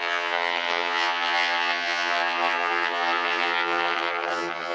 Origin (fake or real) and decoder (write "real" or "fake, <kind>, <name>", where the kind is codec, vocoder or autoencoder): fake, vocoder, HiFi-GAN